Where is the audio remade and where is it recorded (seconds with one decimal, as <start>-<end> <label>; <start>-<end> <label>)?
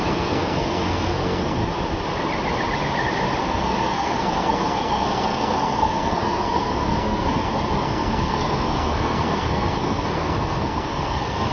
0.0-1.6 remade; 1.6-3.4 recorded; 3.4-11.5 remade